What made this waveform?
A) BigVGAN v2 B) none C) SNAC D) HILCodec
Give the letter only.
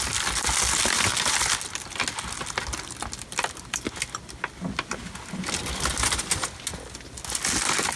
B